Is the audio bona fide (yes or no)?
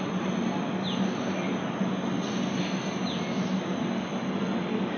yes